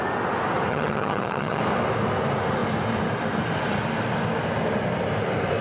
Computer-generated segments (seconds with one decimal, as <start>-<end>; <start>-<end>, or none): 0.7-1.6